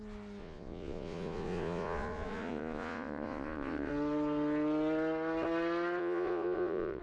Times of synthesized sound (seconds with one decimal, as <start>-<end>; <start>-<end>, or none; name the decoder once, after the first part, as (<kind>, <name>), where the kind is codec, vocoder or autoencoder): 0.4-3.9 (vocoder, Vocos); 6.0-7.0